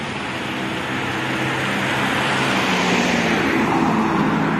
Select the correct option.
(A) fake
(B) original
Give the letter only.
B